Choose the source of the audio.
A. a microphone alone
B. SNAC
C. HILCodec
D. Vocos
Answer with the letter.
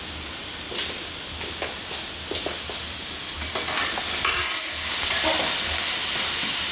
A